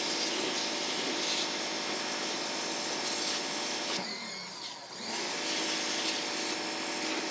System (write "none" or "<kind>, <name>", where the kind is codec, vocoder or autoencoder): none